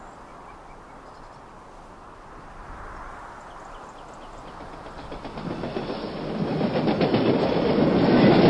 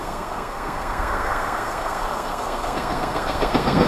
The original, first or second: first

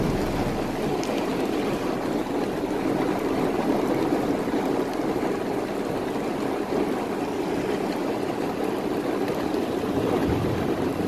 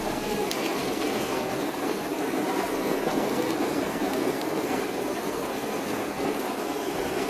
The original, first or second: first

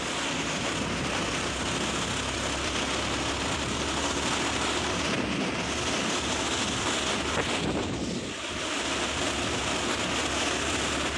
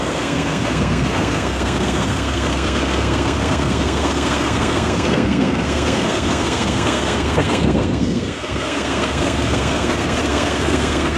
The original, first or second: first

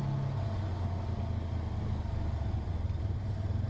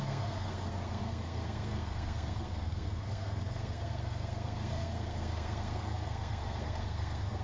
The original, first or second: first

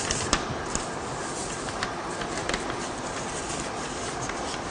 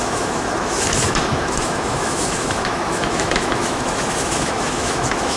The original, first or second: first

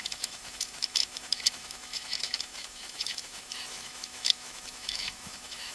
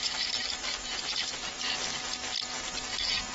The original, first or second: second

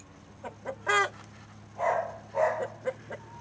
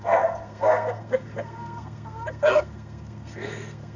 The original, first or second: first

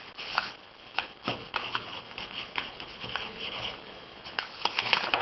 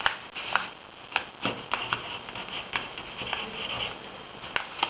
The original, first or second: second